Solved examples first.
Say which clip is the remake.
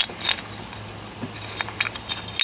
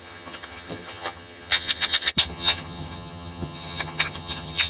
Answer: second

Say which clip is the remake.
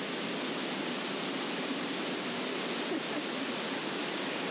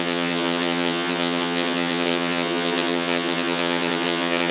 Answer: second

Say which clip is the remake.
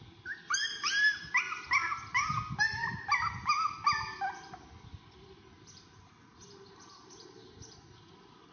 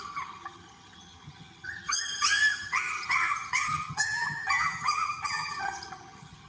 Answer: second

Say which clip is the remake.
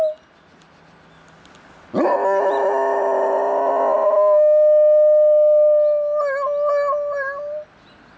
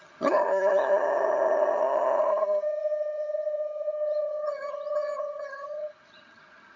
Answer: second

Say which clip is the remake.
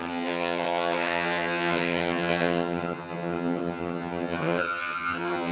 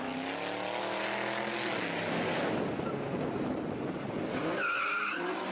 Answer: first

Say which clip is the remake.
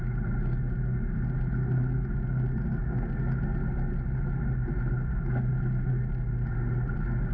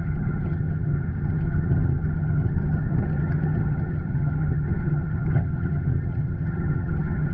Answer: second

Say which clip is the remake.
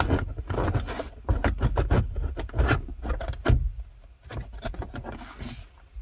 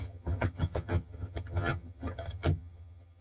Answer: second